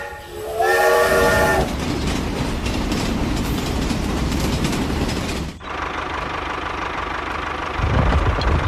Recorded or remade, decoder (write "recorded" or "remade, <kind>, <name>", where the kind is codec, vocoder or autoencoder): remade, vocoder, BigVGAN v2